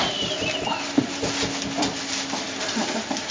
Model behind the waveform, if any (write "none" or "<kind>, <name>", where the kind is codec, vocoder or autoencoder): none